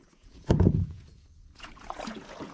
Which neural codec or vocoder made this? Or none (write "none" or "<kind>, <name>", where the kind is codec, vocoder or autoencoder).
vocoder, Vocos